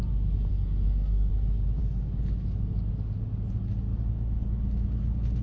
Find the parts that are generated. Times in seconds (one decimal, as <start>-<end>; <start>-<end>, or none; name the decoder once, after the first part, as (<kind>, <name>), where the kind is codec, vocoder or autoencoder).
0.5-1.3 (codec, SNAC)